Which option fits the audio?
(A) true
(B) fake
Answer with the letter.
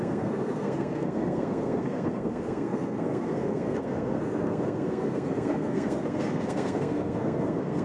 B